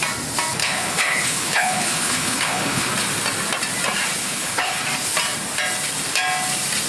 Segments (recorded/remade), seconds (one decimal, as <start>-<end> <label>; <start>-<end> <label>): 0.0-0.6 recorded; 0.6-2.9 remade; 2.9-4.2 recorded; 4.2-4.8 remade; 4.8-6.9 recorded

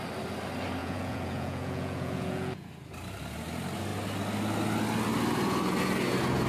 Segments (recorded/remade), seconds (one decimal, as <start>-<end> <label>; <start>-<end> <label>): 0.0-0.8 recorded; 0.8-2.7 remade; 2.7-6.5 recorded

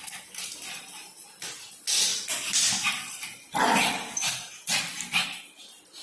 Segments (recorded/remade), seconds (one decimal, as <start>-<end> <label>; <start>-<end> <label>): 0.0-6.0 recorded

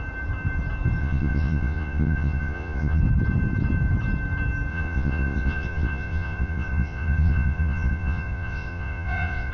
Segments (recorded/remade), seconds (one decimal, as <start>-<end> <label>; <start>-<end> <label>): 0.0-1.0 recorded; 1.0-3.0 remade; 3.0-4.7 recorded; 4.7-9.5 remade

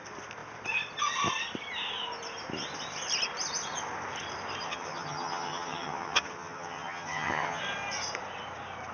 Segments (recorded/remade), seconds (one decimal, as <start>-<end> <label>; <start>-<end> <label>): 0.0-4.6 recorded; 4.6-7.6 remade; 7.6-8.9 recorded

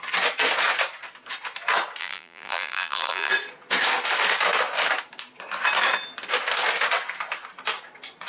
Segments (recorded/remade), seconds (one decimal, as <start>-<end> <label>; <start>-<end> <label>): 0.0-2.0 recorded; 2.0-3.3 remade; 3.3-8.3 recorded

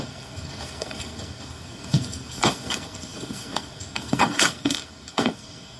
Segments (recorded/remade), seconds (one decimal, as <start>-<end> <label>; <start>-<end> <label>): 0.0-5.8 remade